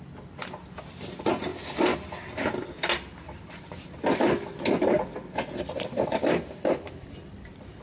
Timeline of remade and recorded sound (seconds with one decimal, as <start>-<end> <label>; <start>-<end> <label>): 0.0-7.8 recorded